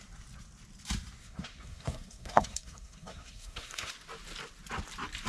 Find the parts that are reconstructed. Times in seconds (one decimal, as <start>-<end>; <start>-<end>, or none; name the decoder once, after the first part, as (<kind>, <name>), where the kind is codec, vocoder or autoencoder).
1.2-3.9 (codec, SNAC)